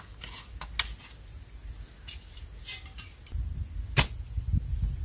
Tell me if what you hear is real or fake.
real